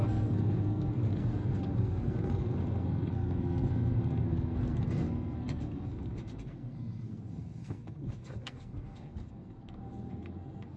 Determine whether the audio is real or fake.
fake